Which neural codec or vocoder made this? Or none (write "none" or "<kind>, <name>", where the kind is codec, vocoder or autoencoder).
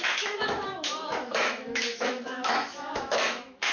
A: autoencoder, DAC-VAE